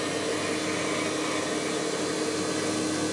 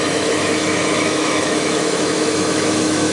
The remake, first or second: second